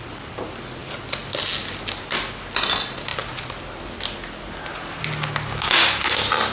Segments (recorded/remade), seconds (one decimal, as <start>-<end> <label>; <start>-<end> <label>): 0.0-6.5 recorded